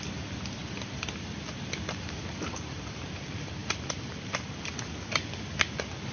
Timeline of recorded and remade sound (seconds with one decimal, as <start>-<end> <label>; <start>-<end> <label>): 0.0-0.6 recorded; 0.6-3.0 remade; 3.0-3.6 recorded; 3.6-5.3 remade; 5.3-6.1 recorded

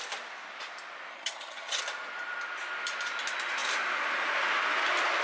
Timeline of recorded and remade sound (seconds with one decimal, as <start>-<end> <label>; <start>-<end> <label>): 0.0-1.1 recorded; 1.1-1.8 remade; 1.8-5.2 recorded

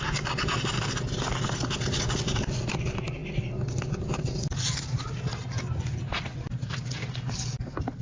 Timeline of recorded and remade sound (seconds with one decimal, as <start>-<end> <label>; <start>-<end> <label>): 0.0-8.0 recorded